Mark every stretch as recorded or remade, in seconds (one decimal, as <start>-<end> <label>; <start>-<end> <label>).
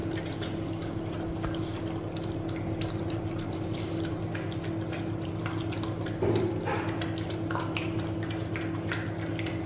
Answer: 0.0-9.7 recorded